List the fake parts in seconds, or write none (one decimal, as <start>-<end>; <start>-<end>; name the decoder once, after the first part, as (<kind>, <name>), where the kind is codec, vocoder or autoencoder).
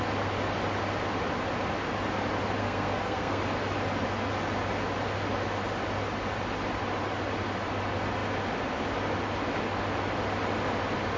2.6-3.4 (codec, SNAC)